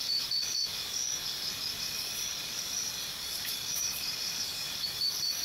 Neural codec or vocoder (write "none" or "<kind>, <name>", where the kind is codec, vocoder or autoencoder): codec, DAC